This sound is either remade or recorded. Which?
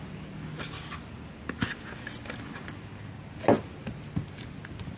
recorded